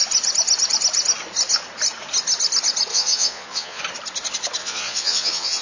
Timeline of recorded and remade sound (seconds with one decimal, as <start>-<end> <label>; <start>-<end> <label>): 0.0-2.9 recorded; 2.9-3.8 remade; 3.8-4.6 recorded; 4.6-5.6 remade